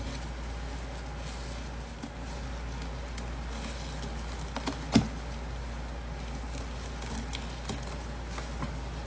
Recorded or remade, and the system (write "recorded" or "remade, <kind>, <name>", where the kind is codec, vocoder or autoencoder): recorded